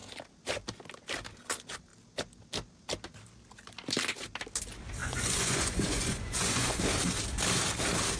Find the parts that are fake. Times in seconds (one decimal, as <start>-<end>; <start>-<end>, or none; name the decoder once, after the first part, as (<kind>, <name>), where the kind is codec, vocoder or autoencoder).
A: 5.0-6.8 (vocoder, Vocos)